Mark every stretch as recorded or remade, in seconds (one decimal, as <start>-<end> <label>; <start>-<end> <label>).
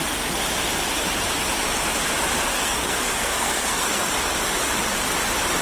0.0-2.5 recorded; 2.5-4.1 remade; 4.1-5.6 recorded